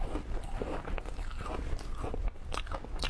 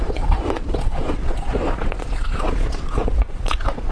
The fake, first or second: second